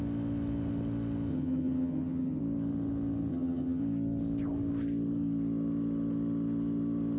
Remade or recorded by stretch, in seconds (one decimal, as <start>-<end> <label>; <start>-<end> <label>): 0.0-1.3 recorded; 1.3-2.4 remade; 2.4-3.3 recorded; 3.3-3.8 remade; 3.8-7.2 recorded